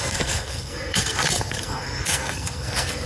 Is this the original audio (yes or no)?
no